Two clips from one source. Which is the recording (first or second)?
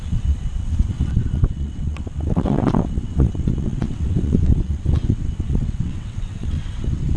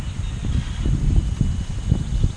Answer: second